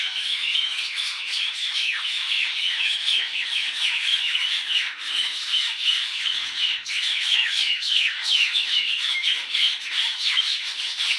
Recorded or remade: remade